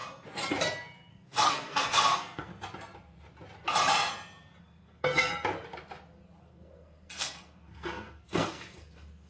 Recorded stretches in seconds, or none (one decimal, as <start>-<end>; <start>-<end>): 0.0-1.1; 2.5-4.6; 5.3-6.4